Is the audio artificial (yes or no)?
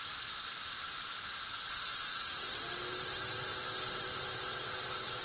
no